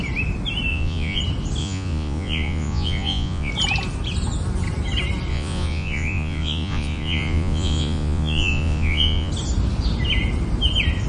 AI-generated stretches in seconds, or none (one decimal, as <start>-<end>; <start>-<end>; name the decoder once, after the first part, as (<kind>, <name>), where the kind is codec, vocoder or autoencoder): 0.7-1.2 (vocoder, Vocos); 1.6-3.5; 5.3-9.3